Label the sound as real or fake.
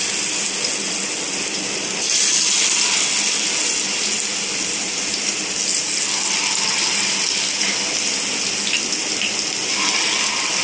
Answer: real